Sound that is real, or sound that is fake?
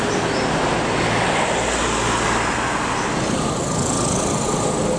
real